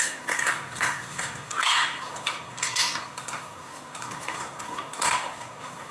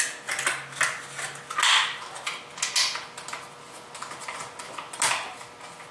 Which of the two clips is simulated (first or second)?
first